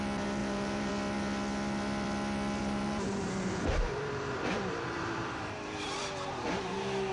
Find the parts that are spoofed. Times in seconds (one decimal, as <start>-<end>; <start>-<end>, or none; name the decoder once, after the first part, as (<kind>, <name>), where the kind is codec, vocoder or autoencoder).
0.4-0.9 (vocoder, BigVGAN v2); 2.6-7.1